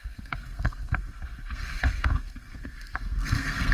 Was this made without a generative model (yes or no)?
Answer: no